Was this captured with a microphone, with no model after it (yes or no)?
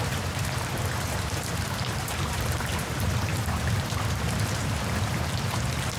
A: no